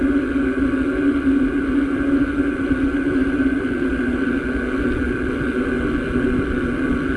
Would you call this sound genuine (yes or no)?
yes